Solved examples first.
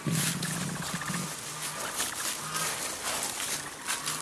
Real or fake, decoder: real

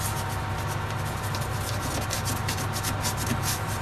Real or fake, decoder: real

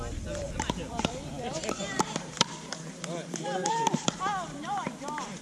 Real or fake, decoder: fake, vocoder, BigVGAN v2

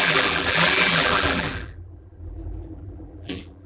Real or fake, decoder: fake, vocoder, BigVGAN v2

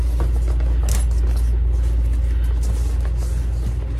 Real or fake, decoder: real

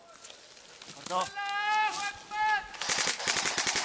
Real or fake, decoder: real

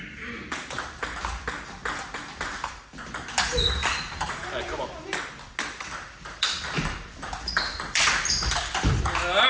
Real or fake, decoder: real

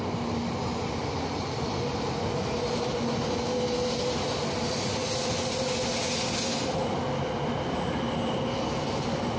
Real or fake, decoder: real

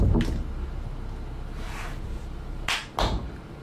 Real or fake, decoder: real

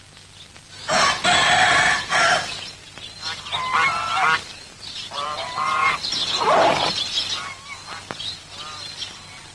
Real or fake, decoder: real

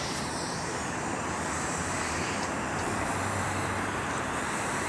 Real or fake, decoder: fake, vocoder, BigVGAN v2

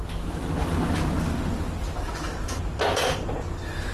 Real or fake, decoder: real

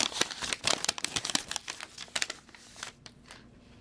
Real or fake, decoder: fake, vocoder, BigVGAN v2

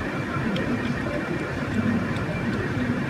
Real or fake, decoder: fake, vocoder, BigVGAN v2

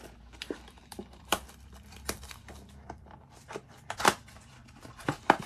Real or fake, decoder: fake, vocoder, BigVGAN v2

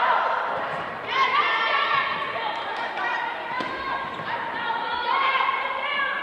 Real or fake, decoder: fake, vocoder, BigVGAN v2